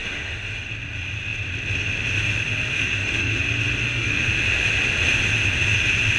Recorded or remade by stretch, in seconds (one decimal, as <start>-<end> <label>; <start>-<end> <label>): 0.0-0.7 remade; 0.7-2.7 recorded; 2.7-3.4 remade; 3.4-3.8 recorded; 3.8-4.4 remade; 4.4-6.2 recorded